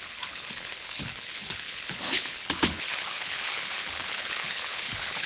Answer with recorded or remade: remade